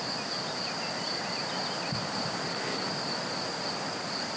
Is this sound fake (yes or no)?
no